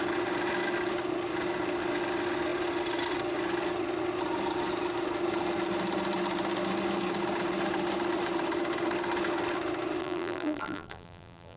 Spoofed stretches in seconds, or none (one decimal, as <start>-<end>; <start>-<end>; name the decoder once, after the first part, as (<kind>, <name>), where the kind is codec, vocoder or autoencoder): 10.0-11.6 (vocoder, BigVGAN v2)